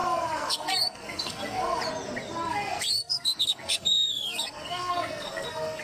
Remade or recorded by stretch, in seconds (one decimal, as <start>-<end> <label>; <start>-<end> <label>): 0.0-1.8 remade; 1.8-2.5 recorded; 2.5-5.8 remade